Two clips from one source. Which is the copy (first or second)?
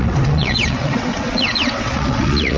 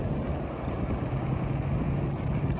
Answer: first